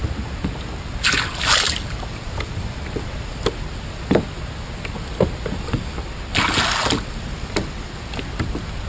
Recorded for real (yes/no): yes